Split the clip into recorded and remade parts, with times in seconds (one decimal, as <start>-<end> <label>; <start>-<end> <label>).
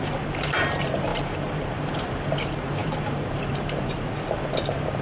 0.0-5.0 remade